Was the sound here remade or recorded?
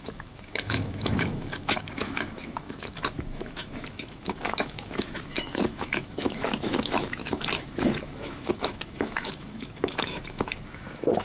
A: remade